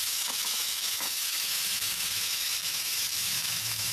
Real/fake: fake